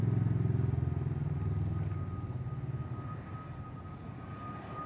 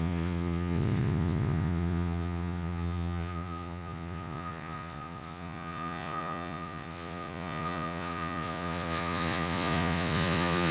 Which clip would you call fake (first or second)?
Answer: second